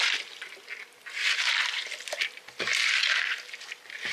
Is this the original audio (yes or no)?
yes